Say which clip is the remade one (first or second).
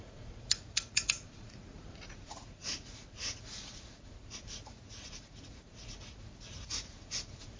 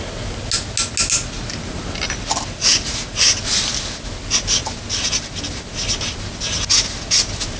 first